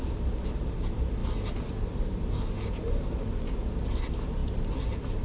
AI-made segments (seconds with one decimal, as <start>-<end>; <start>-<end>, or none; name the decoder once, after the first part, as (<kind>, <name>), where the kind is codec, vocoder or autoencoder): none